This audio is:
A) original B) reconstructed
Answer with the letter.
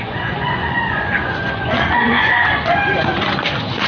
B